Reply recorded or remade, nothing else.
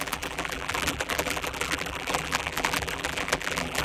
remade